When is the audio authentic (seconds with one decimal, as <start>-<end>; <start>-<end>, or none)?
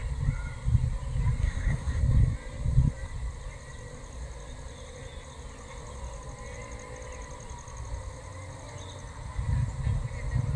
0.0-1.4; 2.0-10.6